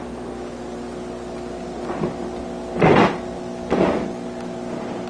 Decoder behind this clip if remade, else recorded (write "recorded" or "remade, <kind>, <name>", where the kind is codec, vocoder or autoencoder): recorded